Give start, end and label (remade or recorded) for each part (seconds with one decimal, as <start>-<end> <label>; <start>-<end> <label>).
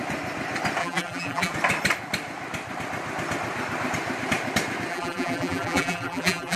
0.0-0.8 recorded; 0.8-1.5 remade; 1.5-4.9 recorded; 4.9-6.6 remade